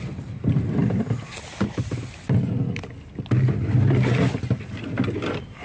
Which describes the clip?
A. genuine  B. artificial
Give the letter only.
A